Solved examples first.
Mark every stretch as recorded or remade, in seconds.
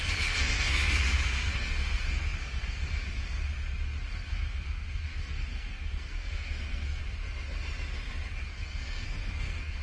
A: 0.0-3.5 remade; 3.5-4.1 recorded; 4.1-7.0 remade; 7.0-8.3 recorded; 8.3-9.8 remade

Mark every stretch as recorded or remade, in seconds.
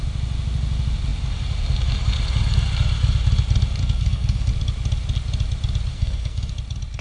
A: 0.0-3.8 recorded; 3.8-4.5 remade; 4.5-5.9 recorded; 5.9-6.5 remade; 6.5-7.0 recorded